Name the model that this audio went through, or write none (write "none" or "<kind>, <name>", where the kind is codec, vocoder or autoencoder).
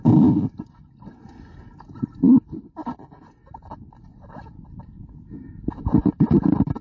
none